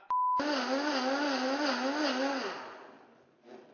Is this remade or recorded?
recorded